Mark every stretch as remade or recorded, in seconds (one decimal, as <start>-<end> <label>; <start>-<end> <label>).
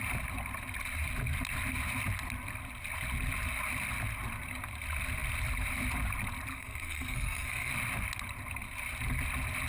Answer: 0.0-6.5 recorded; 6.5-7.7 remade; 7.7-9.7 recorded